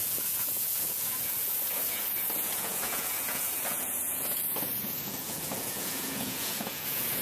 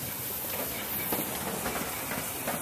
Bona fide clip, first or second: second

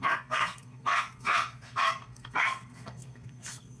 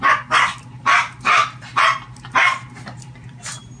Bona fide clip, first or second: second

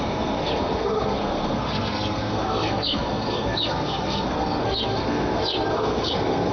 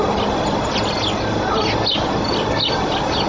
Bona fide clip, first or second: second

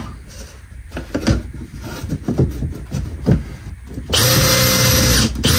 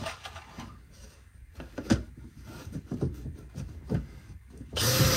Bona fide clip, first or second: first